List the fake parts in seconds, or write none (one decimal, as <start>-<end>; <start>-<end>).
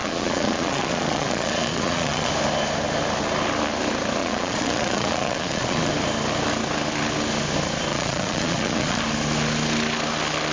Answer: 0.0-2.3; 4.2-5.9; 7.9-9.0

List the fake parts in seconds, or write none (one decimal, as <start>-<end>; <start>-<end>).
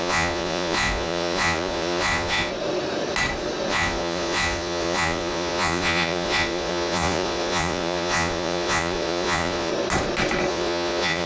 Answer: 0.0-2.5; 3.7-9.7; 10.5-11.3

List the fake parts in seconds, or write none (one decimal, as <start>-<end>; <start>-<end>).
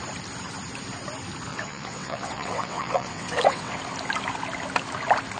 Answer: 1.5-3.8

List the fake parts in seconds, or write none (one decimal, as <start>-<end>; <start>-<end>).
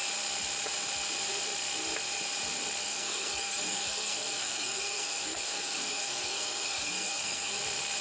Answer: 2.8-7.6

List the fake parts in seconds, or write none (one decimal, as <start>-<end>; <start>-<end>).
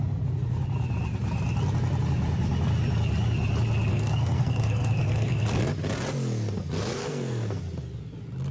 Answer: 3.9-5.6; 7.0-7.6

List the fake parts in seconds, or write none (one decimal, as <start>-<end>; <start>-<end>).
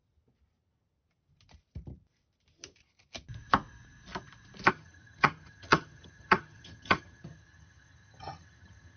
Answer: 4.7-9.0